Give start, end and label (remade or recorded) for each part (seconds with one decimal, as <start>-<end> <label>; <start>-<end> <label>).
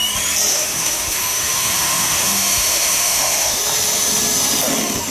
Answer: 0.0-0.5 recorded; 0.5-3.6 remade; 3.6-5.1 recorded